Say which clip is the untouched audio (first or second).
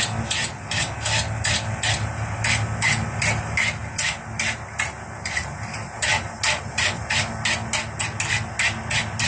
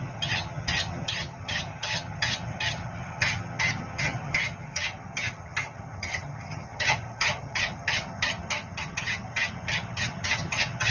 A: first